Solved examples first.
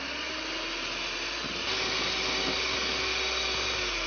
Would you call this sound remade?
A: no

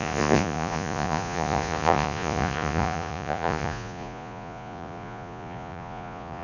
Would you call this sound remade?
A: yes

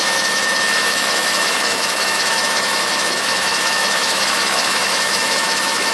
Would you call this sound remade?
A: yes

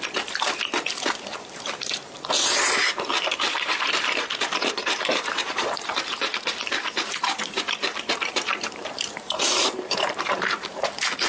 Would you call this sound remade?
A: yes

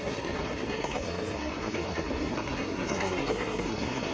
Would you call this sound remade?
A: yes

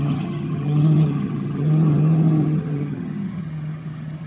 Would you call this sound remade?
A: yes